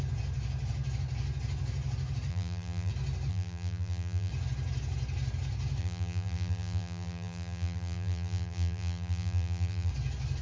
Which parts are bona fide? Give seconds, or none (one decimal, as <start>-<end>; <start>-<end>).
0.0-2.3; 2.9-3.3; 4.3-5.8; 9.9-10.4